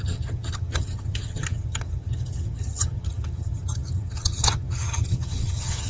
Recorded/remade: remade